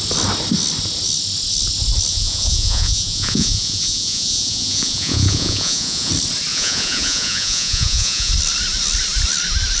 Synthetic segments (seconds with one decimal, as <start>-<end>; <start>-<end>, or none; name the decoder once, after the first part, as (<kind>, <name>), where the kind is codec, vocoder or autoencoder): 2.1-6.1 (vocoder, Vocos); 6.5-8.3